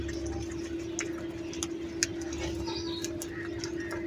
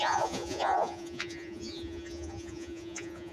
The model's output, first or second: second